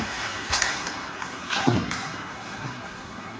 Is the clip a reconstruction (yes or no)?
yes